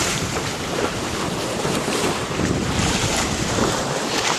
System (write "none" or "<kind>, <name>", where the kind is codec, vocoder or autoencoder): vocoder, BigVGAN v2